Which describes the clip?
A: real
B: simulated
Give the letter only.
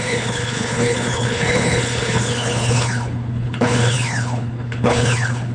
B